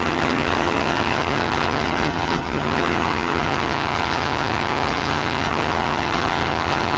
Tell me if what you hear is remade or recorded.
remade